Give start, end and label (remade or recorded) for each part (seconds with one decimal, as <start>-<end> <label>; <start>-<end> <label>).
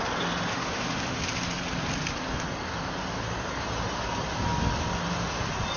0.0-0.5 recorded; 0.5-1.2 remade; 1.2-5.8 recorded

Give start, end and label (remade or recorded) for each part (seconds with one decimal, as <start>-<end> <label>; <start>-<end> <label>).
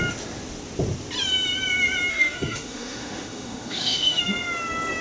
0.0-2.1 recorded; 2.1-4.2 remade; 4.2-5.0 recorded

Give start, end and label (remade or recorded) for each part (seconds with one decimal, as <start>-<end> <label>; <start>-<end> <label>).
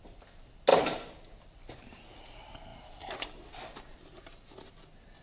0.0-5.2 recorded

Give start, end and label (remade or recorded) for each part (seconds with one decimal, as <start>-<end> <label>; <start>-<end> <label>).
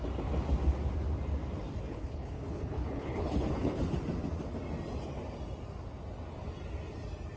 0.0-1.9 recorded; 1.9-3.8 remade; 3.8-7.4 recorded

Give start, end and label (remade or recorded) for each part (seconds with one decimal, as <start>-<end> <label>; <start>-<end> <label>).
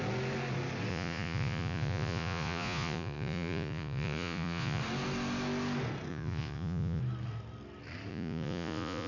0.0-0.9 recorded; 0.9-4.8 remade; 4.8-6.1 recorded; 6.1-7.0 remade; 7.0-8.1 recorded; 8.1-9.1 remade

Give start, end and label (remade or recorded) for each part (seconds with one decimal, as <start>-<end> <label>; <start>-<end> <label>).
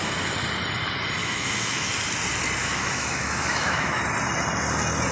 0.0-1.2 recorded; 1.2-1.9 remade; 1.9-2.6 recorded; 2.6-4.0 remade; 4.0-5.1 recorded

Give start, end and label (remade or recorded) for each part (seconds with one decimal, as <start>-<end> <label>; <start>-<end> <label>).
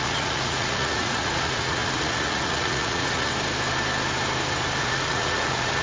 0.0-3.3 remade; 3.3-4.8 recorded; 4.8-5.8 remade